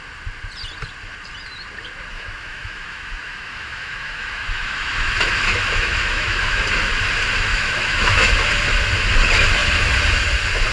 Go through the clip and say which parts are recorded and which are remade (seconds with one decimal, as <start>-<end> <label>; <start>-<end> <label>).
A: 0.0-2.1 recorded; 2.1-6.6 remade; 6.6-7.5 recorded; 7.5-8.3 remade; 8.3-10.7 recorded